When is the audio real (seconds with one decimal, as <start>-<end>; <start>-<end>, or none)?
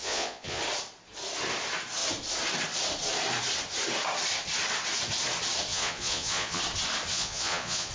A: 0.6-5.7; 6.6-7.1